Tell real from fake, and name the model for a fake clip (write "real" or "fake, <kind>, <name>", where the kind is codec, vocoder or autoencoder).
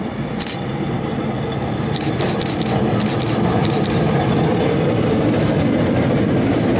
real